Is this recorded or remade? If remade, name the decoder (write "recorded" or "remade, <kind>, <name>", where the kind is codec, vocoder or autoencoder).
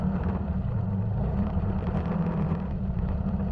remade, vocoder, BigVGAN v2